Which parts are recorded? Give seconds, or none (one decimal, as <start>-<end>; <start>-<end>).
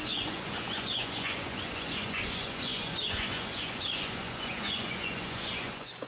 none